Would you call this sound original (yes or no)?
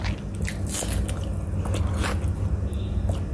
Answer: yes